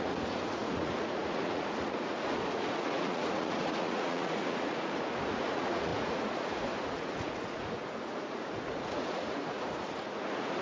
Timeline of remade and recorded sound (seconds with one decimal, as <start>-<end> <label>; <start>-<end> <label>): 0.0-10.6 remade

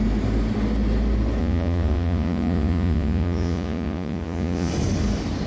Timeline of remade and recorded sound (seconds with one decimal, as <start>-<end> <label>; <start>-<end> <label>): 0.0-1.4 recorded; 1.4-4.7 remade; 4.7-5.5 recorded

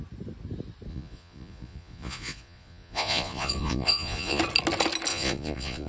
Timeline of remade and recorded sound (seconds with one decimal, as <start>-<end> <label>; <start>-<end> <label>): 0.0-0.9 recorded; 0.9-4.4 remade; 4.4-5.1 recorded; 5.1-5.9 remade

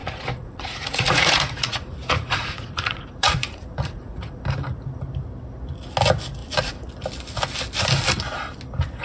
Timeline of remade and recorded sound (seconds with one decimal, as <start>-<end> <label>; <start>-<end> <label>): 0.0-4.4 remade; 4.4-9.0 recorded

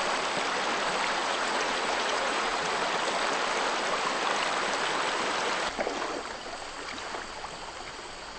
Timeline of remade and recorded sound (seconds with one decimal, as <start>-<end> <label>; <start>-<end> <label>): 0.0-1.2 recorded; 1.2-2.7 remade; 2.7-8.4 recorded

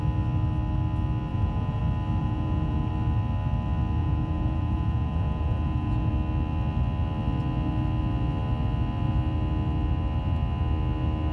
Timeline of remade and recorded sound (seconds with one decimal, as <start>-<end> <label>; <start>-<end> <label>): 0.0-1.3 recorded; 1.3-1.8 remade; 1.8-2.2 recorded; 2.2-2.9 remade; 2.9-4.0 recorded; 4.0-6.1 remade; 6.1-11.3 recorded

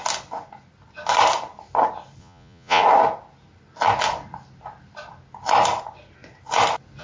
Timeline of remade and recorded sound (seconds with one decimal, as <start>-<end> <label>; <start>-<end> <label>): 0.0-2.2 recorded; 2.2-2.8 remade; 2.8-7.0 recorded